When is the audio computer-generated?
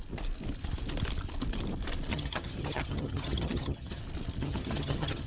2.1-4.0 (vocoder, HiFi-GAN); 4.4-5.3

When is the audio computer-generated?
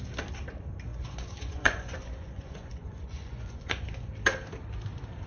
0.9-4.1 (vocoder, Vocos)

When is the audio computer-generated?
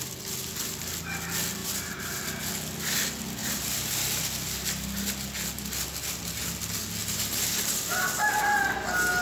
1.6-2.2 (vocoder, BigVGAN v2); 3.4-4.2; 7.0-8.1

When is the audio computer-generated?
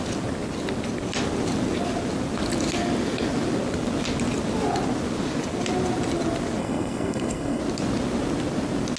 6.6-7.6 (codec, SNAC)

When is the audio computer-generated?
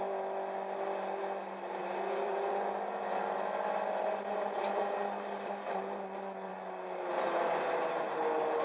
1.8-2.5 (vocoder, BigVGAN v2)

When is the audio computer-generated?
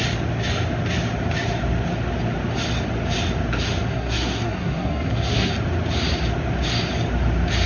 3.9-5.5 (codec, SNAC)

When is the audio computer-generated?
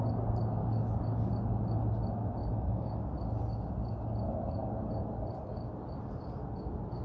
0.6-1.3 (codec, DAC); 2.4-3.0